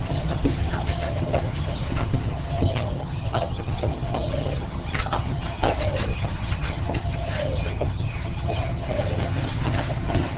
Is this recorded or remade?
remade